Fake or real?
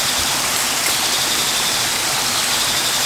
real